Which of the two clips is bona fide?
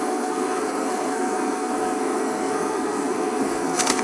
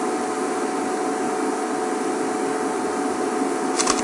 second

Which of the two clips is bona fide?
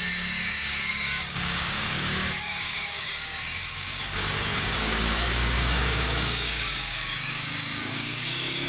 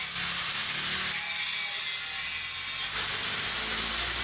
second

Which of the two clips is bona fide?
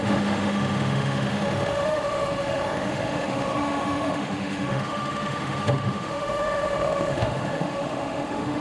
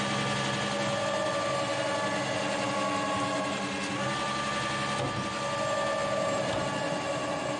second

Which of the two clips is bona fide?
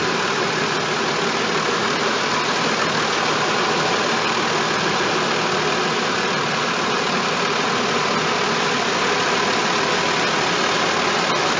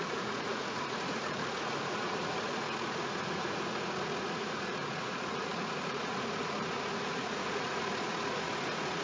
first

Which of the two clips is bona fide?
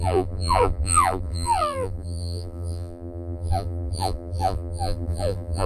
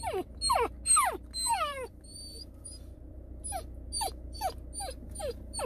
second